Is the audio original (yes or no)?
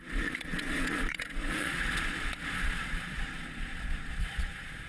no